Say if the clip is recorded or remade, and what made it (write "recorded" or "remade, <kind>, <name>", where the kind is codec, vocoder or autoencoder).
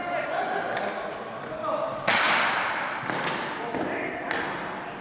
recorded